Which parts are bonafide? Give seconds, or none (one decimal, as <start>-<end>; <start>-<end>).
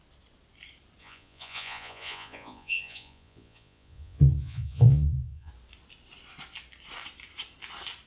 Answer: 0.0-1.0; 5.5-8.1